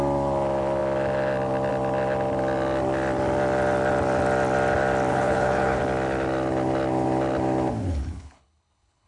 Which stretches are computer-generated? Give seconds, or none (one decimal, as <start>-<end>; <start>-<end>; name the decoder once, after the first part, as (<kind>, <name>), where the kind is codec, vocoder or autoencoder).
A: 5.1-5.8 (codec, HILCodec); 7.8-9.1